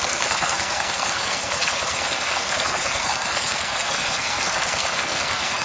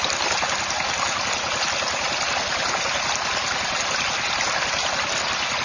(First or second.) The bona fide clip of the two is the second